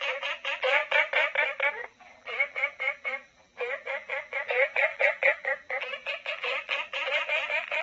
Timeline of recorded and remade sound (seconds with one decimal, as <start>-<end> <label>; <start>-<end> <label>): 0.0-0.8 remade; 0.8-1.7 recorded; 1.7-7.8 remade